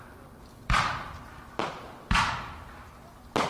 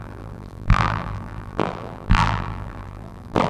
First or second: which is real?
first